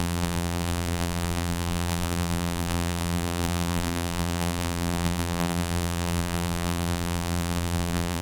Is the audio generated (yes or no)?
yes